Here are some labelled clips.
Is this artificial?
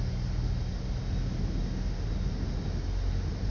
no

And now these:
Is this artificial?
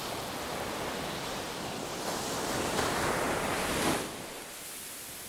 no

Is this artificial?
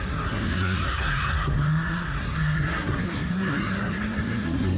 yes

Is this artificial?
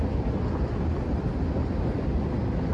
no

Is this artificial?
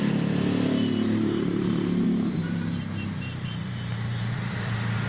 yes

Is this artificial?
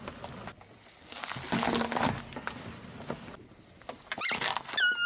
no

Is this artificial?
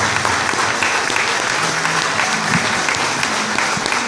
no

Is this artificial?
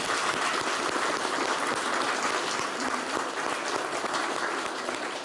no